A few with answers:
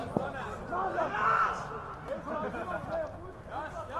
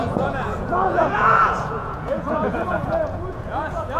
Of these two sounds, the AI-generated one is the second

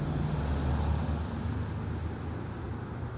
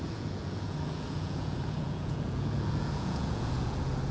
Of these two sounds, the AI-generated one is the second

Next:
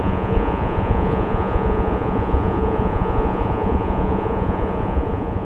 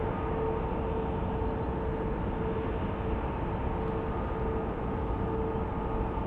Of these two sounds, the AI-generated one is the first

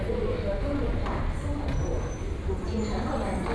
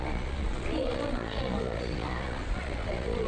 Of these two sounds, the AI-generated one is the second